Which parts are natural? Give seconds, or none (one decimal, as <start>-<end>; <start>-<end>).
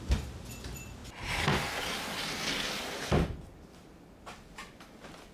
0.0-5.3